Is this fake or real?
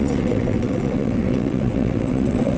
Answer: fake